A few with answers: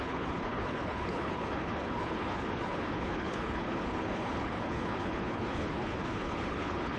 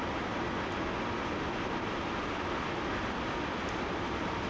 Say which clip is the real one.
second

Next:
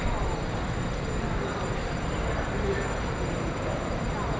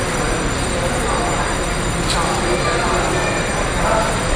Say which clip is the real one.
second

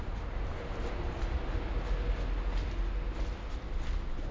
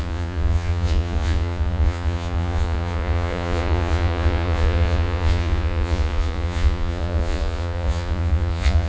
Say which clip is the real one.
first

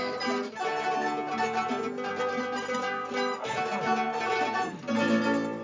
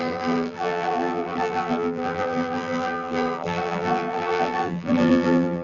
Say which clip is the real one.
first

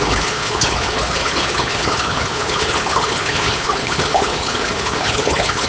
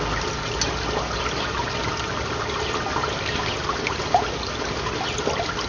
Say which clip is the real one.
second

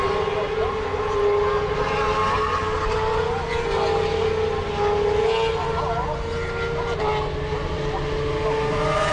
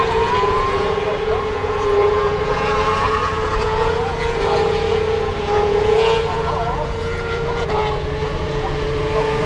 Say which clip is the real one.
first